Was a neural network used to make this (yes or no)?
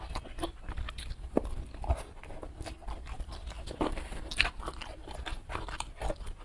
yes